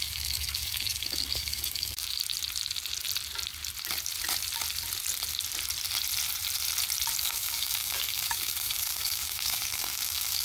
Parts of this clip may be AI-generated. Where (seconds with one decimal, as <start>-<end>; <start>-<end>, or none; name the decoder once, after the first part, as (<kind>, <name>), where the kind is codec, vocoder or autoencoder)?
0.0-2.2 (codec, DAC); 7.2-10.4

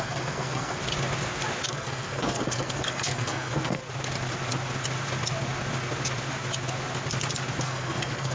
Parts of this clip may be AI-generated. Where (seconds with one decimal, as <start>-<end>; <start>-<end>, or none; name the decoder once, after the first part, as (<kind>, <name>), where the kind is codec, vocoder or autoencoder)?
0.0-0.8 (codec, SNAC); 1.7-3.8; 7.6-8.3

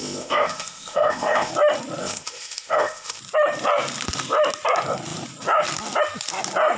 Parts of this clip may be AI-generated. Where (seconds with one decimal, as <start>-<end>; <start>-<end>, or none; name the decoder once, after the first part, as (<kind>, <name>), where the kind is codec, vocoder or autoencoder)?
0.0-1.5 (codec, ZipCodec); 2.0-3.2

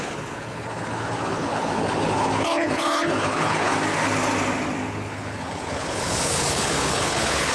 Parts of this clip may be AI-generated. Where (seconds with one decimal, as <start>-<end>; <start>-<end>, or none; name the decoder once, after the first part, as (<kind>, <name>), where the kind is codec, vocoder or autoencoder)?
0.0-3.7 (codec, HILCodec); 4.9-7.5

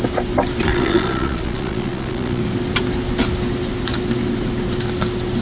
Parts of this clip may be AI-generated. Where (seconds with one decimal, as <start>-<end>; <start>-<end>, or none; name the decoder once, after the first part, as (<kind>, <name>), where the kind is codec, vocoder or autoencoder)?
0.7-2.4 (vocoder, Vocos)

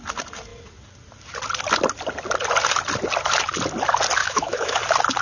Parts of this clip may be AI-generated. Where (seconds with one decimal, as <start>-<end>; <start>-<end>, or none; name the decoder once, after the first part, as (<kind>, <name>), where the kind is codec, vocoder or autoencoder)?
4.2-4.8 (autoencoder, DAC-VAE)

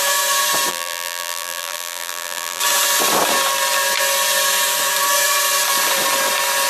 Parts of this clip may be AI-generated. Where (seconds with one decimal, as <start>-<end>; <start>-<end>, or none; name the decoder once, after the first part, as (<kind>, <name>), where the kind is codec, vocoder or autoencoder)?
0.7-2.6 (vocoder, BigVGAN v2)

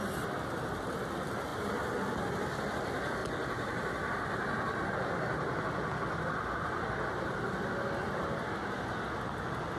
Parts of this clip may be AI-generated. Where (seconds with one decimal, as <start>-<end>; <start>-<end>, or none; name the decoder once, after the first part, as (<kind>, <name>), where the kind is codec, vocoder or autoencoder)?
none